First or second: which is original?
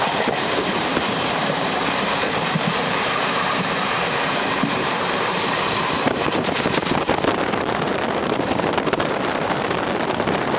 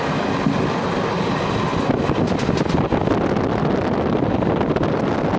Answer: second